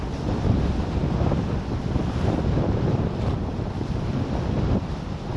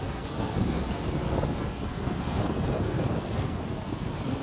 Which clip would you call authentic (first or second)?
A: first